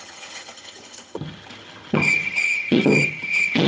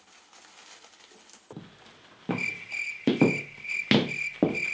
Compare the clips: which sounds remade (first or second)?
first